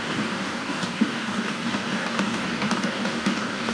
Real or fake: fake